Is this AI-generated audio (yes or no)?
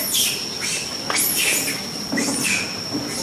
no